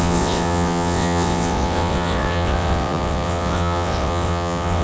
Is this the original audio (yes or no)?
no